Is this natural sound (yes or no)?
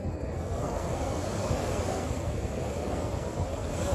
no